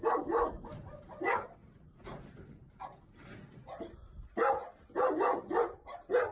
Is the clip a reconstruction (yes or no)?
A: no